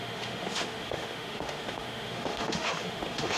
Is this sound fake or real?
fake